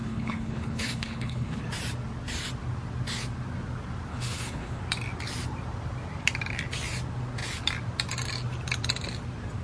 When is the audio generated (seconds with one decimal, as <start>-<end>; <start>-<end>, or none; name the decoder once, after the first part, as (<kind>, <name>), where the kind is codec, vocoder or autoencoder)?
0.0-1.6 (codec, HILCodec); 4.1-4.8